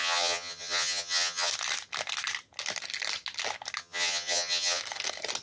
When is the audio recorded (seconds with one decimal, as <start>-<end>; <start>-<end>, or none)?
1.5-3.8; 4.8-5.4